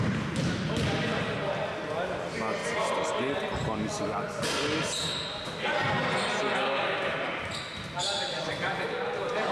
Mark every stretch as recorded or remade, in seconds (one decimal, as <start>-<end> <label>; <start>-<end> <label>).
0.0-9.5 recorded